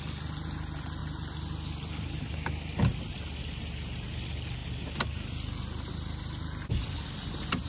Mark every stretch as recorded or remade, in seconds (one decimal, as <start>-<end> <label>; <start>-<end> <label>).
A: 0.0-7.7 recorded

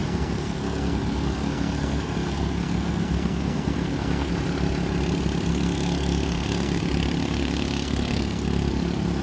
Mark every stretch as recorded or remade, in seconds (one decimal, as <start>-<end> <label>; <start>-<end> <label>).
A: 0.0-4.3 remade; 4.3-5.5 recorded; 5.5-6.8 remade; 6.8-7.2 recorded; 7.2-8.7 remade; 8.7-9.2 recorded

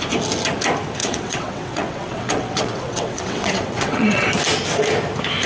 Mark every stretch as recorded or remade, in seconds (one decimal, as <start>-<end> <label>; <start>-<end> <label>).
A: 0.0-1.0 recorded; 1.0-4.3 remade; 4.3-5.5 recorded